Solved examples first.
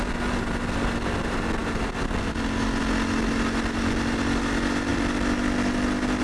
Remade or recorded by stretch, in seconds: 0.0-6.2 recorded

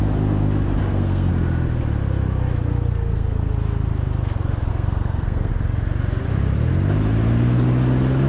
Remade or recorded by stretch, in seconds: 0.0-0.8 recorded; 0.8-1.3 remade; 1.3-2.9 recorded; 2.9-3.5 remade; 3.5-4.7 recorded; 4.7-5.5 remade; 5.5-8.3 recorded

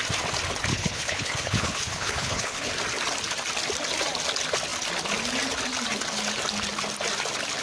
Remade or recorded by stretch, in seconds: 0.0-0.7 recorded; 0.7-2.7 remade; 2.7-7.6 recorded

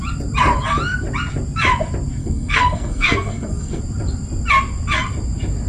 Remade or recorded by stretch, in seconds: 0.0-2.2 recorded; 2.2-3.8 remade; 3.8-5.7 recorded

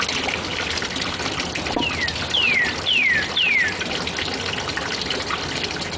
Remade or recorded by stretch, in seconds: 0.0-0.5 recorded; 0.5-3.4 remade; 3.4-6.0 recorded

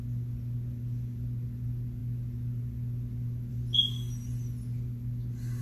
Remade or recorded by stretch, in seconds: 0.0-5.6 recorded

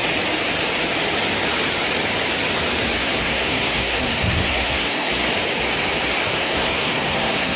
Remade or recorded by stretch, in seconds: 0.0-3.0 recorded; 3.0-5.1 remade; 5.1-6.3 recorded; 6.3-7.6 remade